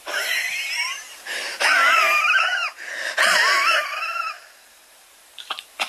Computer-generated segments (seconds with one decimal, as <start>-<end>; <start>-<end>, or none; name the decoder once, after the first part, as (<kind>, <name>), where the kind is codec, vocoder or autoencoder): 0.0-2.5 (vocoder, BigVGAN v2); 4.9-5.9